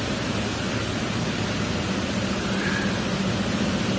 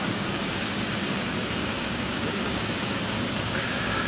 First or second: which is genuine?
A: first